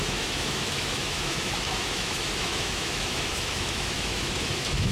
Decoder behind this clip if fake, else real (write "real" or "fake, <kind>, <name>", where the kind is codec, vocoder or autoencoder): fake, autoencoder, DAC-VAE